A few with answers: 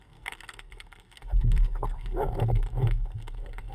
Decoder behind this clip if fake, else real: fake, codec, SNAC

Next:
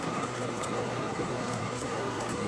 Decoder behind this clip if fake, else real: fake, codec, SNAC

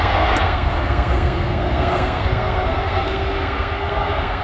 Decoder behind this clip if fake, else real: fake, codec, SNAC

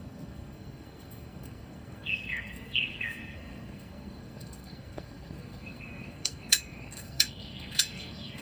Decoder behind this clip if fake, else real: fake, codec, SNAC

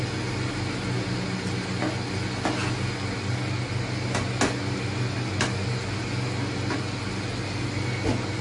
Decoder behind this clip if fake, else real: real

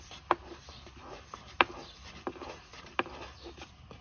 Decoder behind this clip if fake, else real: real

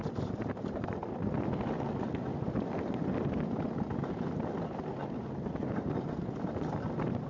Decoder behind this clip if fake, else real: real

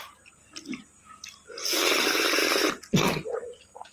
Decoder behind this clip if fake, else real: real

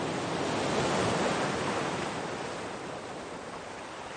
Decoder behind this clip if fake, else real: real